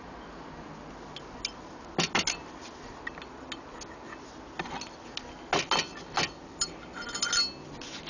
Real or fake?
real